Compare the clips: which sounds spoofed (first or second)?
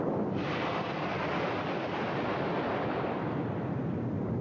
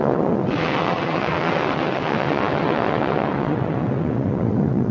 second